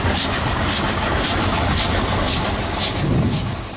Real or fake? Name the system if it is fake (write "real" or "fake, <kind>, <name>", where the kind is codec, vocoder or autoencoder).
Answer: real